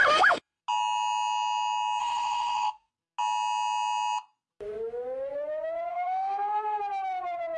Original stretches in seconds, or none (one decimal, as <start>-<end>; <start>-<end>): 0.6-2.0; 2.9-5.9; 6.8-7.6